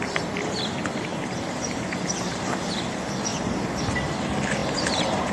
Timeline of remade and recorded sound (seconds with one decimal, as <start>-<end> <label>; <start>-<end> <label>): 0.0-1.1 recorded; 1.1-2.7 remade; 2.7-3.3 recorded; 3.3-3.8 remade; 3.8-4.6 recorded; 4.6-5.3 remade